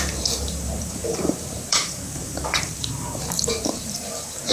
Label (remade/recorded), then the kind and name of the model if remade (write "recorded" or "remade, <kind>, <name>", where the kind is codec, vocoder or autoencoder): remade, vocoder, BigVGAN v2